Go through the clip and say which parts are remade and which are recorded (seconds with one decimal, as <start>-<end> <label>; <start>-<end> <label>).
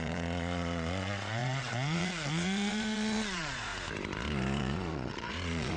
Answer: 0.0-3.7 remade; 3.7-4.6 recorded; 4.6-5.8 remade